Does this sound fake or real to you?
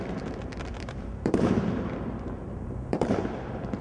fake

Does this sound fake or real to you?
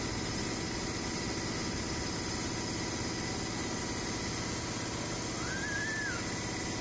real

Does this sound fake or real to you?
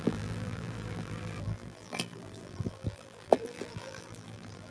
fake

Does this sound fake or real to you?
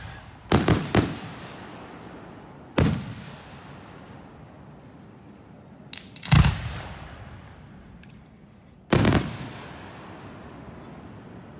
real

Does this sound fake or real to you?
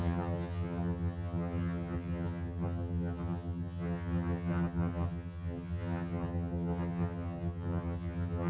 fake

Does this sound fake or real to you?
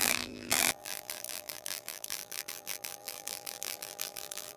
fake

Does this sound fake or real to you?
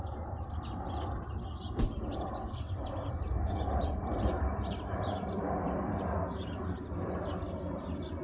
fake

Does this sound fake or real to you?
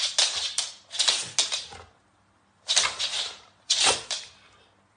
real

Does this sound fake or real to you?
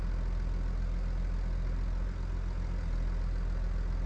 real